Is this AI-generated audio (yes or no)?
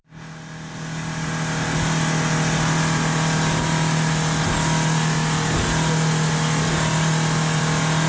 no